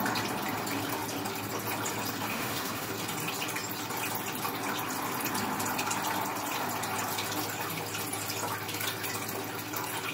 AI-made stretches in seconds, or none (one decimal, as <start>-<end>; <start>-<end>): 2.3-2.9